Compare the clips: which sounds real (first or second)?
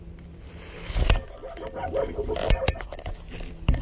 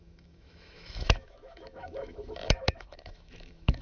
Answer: first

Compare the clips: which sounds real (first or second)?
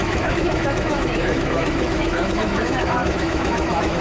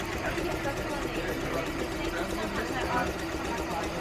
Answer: second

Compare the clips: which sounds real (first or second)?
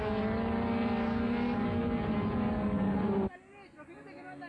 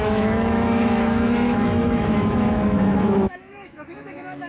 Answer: first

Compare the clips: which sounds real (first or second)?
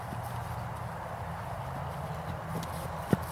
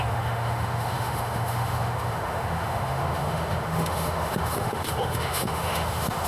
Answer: first